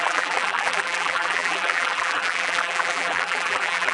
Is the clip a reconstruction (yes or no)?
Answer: yes